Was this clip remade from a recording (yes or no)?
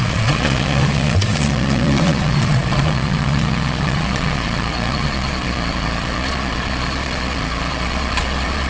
yes